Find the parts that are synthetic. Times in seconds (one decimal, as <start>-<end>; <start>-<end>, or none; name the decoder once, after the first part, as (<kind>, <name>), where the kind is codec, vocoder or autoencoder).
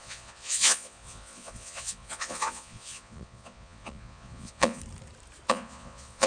0.0-4.8 (vocoder, Vocos); 5.5-6.3